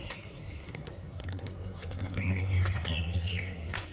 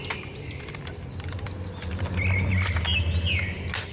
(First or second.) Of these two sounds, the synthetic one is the first